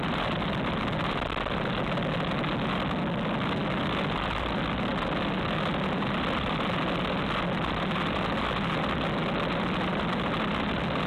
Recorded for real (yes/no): yes